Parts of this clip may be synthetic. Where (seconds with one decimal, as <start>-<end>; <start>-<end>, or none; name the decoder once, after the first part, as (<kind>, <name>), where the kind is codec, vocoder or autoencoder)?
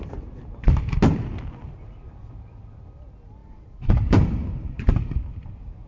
3.4-5.9 (vocoder, BigVGAN v2)